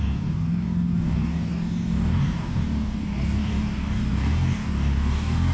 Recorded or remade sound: remade